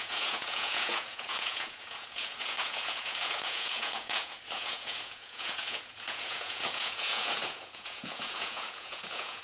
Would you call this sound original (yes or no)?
no